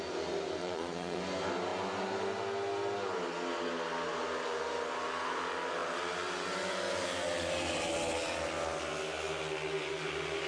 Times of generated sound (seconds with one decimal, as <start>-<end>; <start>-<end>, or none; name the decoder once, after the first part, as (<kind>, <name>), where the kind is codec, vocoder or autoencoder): 0.6-1.2 (vocoder, Vocos)